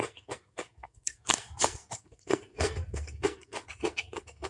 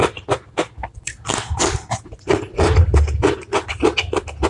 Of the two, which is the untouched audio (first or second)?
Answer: second